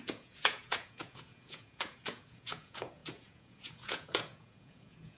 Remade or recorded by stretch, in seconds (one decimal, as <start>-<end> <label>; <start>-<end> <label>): 0.0-5.2 remade